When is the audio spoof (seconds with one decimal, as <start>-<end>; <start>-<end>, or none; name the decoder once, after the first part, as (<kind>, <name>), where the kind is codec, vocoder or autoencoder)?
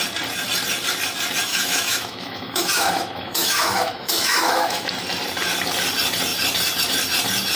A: 1.5-4.9 (autoencoder, DAC-VAE)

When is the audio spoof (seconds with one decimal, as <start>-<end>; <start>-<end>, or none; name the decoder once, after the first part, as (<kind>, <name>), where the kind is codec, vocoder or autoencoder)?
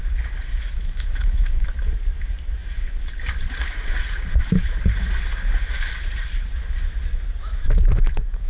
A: 0.5-1.6 (autoencoder, DAC-VAE); 4.3-4.8; 7.4-8.5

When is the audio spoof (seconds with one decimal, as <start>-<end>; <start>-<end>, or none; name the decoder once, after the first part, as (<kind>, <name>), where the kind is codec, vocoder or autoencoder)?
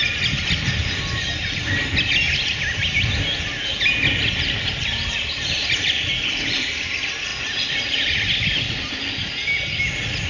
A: none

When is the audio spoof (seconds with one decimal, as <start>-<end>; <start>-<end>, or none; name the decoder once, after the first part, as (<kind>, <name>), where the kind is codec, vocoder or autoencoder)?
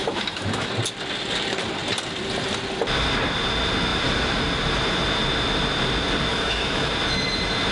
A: 0.0-0.7 (autoencoder, DAC-VAE); 6.3-6.9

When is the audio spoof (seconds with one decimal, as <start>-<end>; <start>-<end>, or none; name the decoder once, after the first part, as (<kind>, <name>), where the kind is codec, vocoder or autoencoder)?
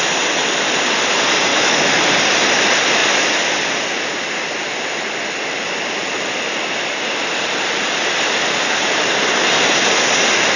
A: 1.5-2.0 (autoencoder, DAC-VAE)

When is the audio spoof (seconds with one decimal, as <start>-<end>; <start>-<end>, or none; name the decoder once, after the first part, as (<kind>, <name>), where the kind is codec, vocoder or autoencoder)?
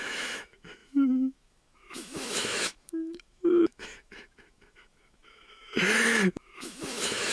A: 0.0-7.3 (autoencoder, DAC-VAE)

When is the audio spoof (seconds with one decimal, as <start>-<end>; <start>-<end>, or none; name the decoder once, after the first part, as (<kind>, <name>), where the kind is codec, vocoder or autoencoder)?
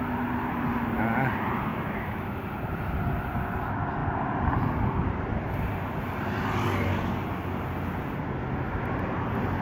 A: 1.7-2.4 (autoencoder, DAC-VAE)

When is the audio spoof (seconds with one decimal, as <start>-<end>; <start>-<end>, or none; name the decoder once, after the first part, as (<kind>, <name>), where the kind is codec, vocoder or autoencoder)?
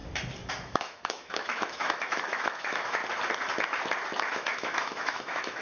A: 0.5-3.0 (autoencoder, DAC-VAE); 4.3-5.6